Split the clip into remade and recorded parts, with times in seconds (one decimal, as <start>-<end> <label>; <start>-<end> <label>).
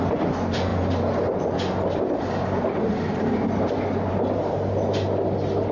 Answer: 0.0-5.7 recorded